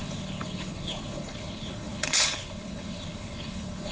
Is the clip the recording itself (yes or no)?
no